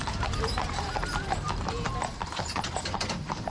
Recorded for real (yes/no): no